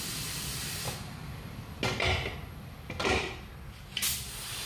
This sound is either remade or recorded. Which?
recorded